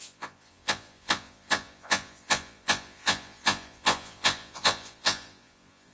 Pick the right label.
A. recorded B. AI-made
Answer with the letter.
B